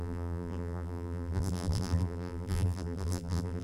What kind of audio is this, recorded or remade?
remade